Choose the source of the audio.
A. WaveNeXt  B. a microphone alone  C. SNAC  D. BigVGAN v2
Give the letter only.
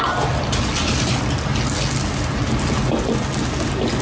B